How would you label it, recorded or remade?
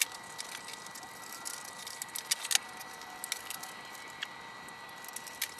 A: recorded